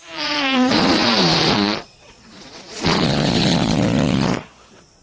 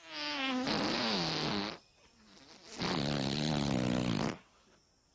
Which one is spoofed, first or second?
first